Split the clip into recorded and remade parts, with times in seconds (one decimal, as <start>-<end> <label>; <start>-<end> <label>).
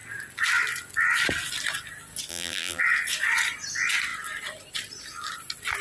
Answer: 0.0-2.3 recorded; 2.3-2.8 remade; 2.8-5.8 recorded